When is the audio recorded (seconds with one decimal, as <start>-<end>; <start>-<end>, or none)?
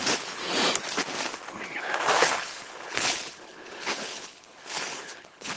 0.6-2.1